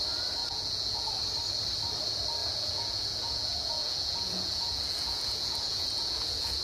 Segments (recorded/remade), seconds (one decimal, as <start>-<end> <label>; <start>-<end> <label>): 0.0-0.4 recorded; 0.4-1.1 remade; 1.1-2.4 recorded; 2.4-6.6 remade

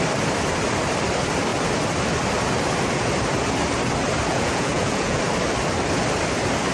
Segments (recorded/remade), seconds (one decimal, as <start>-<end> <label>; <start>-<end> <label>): 0.0-4.3 recorded; 4.3-5.2 remade; 5.2-6.7 recorded